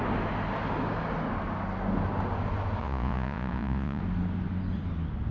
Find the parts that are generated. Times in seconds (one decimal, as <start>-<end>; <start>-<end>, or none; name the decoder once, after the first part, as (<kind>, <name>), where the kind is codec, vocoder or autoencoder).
2.8-4.0 (vocoder, Vocos)